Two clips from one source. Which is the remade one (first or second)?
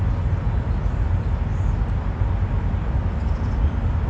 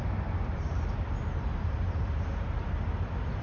second